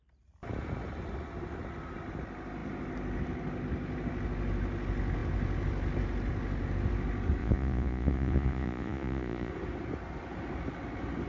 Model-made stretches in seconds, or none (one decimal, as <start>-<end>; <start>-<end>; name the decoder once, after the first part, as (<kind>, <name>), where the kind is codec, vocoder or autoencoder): 7.4-9.5 (vocoder, Vocos)